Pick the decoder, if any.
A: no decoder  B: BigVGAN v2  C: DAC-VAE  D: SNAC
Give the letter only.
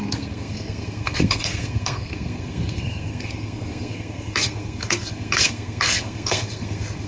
D